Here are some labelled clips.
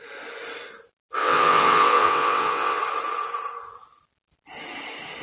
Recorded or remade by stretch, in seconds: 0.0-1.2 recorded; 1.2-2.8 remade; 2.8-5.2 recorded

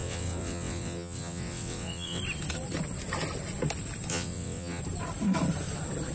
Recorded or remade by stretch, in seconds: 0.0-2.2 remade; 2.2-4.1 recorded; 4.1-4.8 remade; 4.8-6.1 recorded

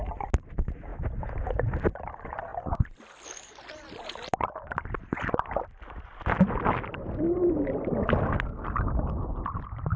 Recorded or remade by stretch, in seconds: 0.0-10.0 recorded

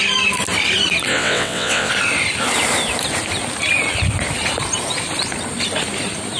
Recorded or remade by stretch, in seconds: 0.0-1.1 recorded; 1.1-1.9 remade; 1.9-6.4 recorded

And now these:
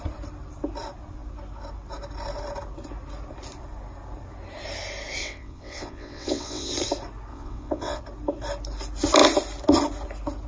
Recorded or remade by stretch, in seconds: 0.0-5.2 recorded; 5.2-6.7 remade; 6.7-7.3 recorded; 7.3-8.0 remade; 8.0-10.5 recorded

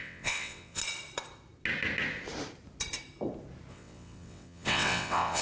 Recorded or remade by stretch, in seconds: 0.0-0.8 remade; 0.8-3.7 recorded; 3.7-5.4 remade

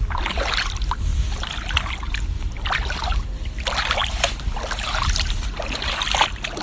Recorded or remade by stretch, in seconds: 0.0-6.6 recorded